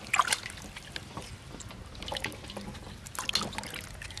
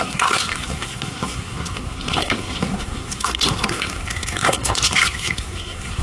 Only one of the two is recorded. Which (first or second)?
first